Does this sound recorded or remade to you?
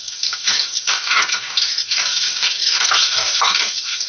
remade